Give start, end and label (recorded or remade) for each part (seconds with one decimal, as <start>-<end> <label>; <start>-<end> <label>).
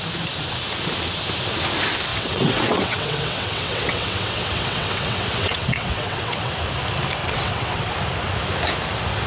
0.0-2.1 recorded; 2.1-6.5 remade; 6.5-7.2 recorded; 7.2-7.9 remade; 7.9-9.3 recorded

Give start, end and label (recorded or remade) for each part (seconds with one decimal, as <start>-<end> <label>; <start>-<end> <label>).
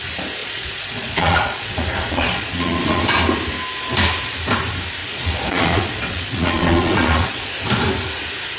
0.0-0.4 recorded; 0.4-3.0 remade; 3.0-5.0 recorded; 5.0-7.5 remade; 7.5-8.6 recorded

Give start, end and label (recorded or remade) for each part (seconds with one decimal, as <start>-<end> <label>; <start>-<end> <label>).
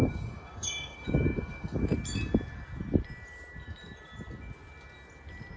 0.0-1.9 remade; 1.9-5.6 recorded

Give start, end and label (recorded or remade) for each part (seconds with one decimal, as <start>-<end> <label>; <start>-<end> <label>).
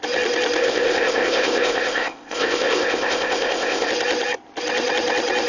0.0-0.6 recorded; 0.6-3.9 remade; 3.9-5.5 recorded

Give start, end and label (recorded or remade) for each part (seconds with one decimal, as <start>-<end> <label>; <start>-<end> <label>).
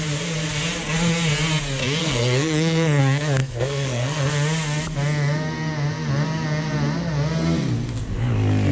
0.0-2.0 recorded; 2.0-3.0 remade; 3.0-3.4 recorded; 3.4-4.3 remade; 4.3-8.7 recorded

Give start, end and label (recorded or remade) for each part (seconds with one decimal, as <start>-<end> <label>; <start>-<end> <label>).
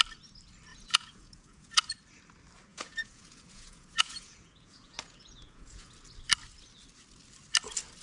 0.0-0.7 recorded; 0.7-1.8 remade; 1.8-2.7 recorded; 2.7-5.9 remade; 5.9-8.0 recorded